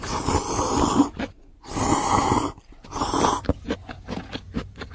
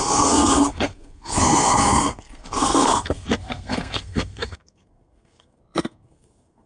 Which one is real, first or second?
first